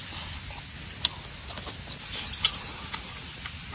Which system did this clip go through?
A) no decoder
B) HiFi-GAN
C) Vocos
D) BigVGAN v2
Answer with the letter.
A